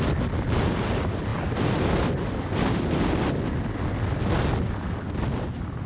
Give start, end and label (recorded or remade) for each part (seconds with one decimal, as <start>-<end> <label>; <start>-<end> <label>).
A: 0.0-5.9 recorded